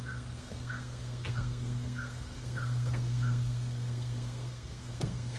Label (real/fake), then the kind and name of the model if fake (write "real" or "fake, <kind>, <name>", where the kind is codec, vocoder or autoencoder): fake, codec, SNAC